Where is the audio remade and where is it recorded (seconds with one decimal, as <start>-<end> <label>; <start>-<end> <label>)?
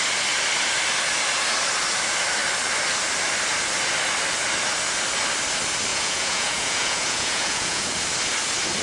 0.0-5.9 recorded; 5.9-7.9 remade; 7.9-8.8 recorded